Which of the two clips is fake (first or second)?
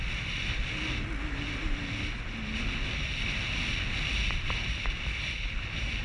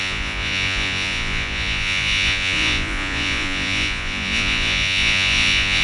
second